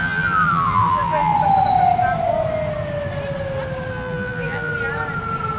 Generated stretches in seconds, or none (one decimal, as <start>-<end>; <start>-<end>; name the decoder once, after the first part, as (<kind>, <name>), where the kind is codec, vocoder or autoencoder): 0.0-1.3 (vocoder, BigVGAN v2); 3.9-4.7